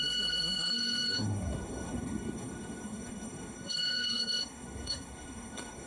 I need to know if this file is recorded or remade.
remade